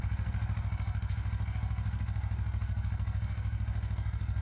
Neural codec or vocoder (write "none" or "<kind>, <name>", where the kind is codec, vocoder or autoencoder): codec, SNAC